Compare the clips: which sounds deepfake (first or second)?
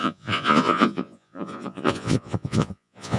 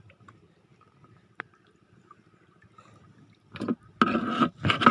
first